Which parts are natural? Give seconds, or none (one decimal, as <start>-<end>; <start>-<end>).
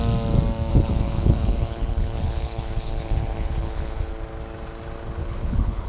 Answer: 0.0-0.7; 4.1-5.2